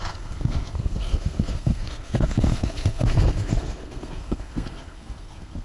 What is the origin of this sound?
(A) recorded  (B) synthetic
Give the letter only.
B